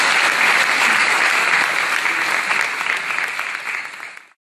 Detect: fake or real real